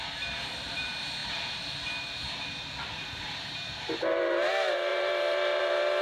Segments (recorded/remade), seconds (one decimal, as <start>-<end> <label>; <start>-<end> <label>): 0.0-6.0 remade